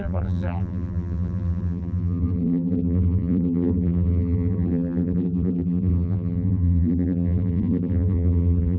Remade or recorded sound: remade